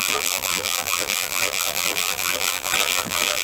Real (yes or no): no